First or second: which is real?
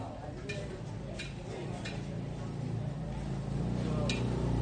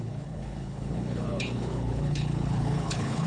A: first